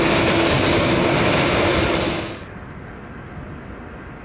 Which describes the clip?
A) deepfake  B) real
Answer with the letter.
B